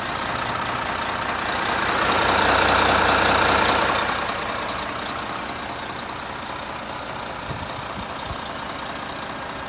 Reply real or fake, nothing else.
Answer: real